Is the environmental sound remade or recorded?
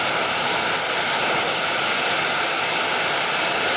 recorded